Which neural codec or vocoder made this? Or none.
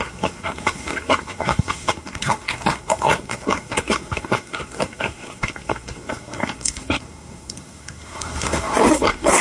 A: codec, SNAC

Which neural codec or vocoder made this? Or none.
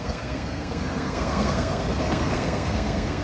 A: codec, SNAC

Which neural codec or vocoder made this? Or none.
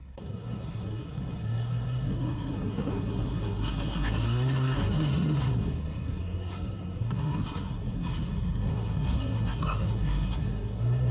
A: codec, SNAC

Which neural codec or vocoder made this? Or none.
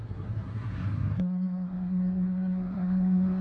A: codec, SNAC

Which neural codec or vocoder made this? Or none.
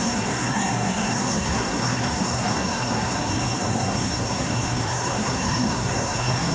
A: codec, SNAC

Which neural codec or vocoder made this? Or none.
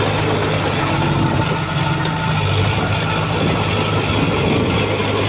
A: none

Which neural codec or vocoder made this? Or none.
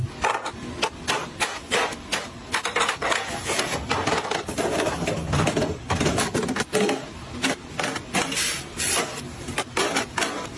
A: none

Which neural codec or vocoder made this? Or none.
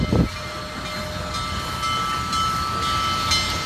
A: none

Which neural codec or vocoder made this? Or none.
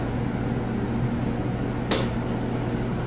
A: none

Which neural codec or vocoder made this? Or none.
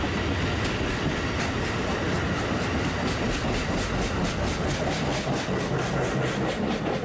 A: none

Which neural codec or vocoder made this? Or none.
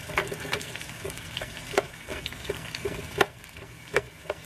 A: codec, SNAC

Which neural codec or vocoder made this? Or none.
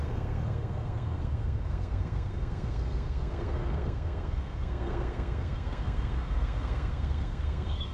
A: codec, SNAC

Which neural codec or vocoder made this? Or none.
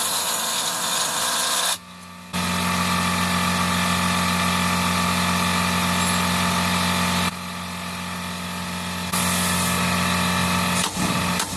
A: none